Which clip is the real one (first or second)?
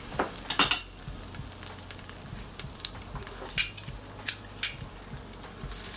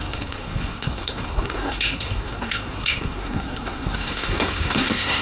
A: first